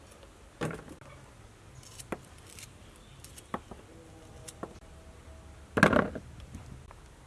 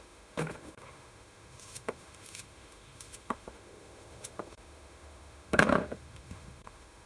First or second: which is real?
first